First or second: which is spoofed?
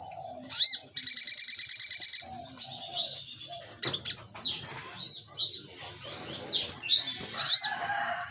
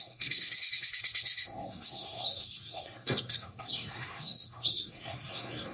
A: second